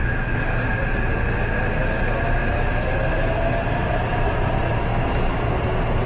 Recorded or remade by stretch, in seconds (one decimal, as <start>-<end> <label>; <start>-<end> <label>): 0.0-4.9 recorded; 4.9-5.5 remade; 5.5-6.1 recorded